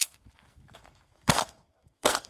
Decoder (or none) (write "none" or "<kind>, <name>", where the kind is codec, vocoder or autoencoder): codec, SNAC